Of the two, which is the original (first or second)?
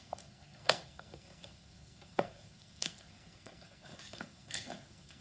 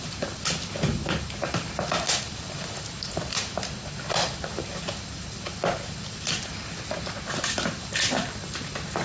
second